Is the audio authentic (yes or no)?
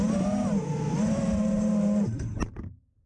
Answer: no